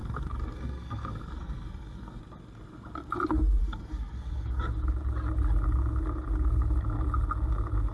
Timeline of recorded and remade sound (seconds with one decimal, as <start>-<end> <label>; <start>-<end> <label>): 0.0-2.2 remade; 2.2-3.6 recorded; 3.6-4.7 remade; 4.7-7.9 recorded